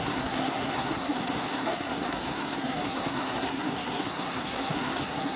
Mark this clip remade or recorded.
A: remade